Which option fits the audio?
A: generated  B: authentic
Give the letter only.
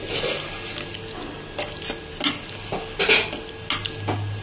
B